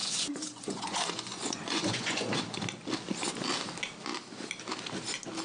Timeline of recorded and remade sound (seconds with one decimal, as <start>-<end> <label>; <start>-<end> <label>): 0.0-2.4 remade; 2.4-5.4 recorded